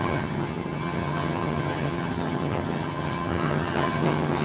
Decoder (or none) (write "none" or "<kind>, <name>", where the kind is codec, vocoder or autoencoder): vocoder, HiFi-GAN